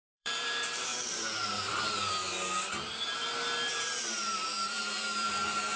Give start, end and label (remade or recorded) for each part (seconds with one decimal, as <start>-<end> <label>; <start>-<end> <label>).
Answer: 0.0-2.2 remade; 2.2-3.7 recorded; 3.7-5.8 remade